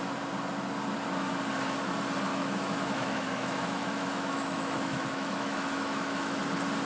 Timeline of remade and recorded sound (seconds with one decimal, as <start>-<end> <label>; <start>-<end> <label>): 0.0-2.3 recorded; 2.3-6.4 remade; 6.4-6.9 recorded